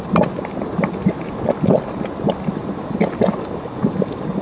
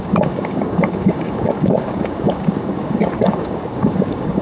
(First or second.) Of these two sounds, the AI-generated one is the second